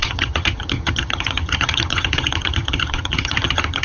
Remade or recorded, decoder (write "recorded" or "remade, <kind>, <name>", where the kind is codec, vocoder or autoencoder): remade, vocoder, HiFi-GAN